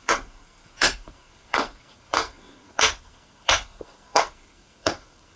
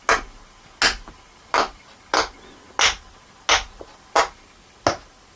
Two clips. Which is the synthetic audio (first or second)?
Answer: first